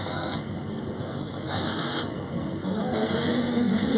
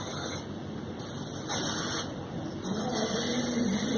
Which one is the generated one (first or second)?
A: first